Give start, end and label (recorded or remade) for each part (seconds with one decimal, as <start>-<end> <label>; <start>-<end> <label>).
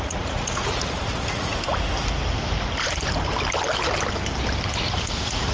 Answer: 0.0-1.5 remade; 1.5-4.8 recorded; 4.8-5.5 remade